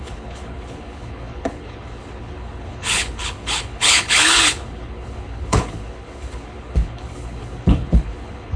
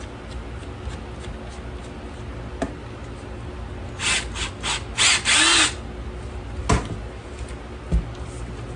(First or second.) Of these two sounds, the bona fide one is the second